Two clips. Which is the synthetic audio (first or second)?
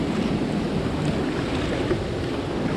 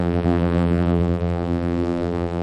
second